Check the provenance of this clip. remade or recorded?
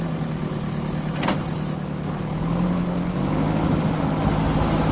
recorded